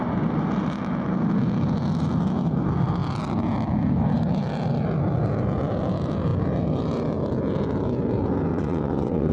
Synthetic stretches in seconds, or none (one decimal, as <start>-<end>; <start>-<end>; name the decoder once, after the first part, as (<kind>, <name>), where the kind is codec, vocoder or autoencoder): 8.5-9.3 (vocoder, WaveNeXt)